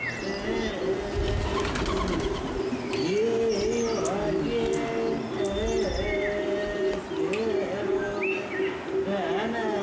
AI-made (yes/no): no